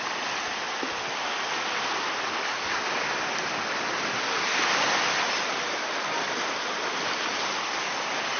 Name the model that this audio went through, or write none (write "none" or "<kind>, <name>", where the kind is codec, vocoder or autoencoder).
none